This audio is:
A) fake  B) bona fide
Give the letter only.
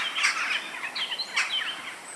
B